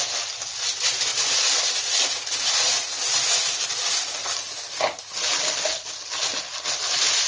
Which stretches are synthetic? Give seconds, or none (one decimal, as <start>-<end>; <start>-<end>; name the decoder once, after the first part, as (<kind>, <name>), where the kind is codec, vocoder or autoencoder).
none